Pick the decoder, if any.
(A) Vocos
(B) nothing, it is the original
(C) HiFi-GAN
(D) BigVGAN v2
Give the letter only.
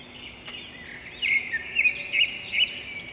B